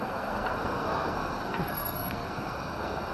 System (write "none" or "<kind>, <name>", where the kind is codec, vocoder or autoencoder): codec, SNAC